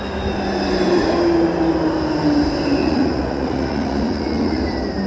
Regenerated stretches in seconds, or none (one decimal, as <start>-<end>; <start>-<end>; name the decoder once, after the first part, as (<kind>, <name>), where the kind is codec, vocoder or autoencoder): 2.8-4.6 (vocoder, Vocos)